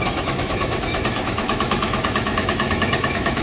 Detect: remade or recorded remade